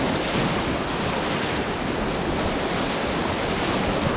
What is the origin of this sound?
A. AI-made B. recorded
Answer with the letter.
B